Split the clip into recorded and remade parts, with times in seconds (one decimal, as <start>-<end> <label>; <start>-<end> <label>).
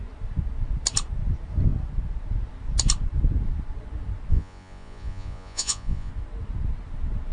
0.0-4.3 recorded; 4.3-6.1 remade; 6.1-7.3 recorded